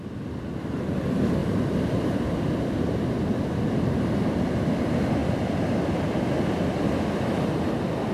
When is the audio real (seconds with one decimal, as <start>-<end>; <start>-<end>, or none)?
0.0-8.1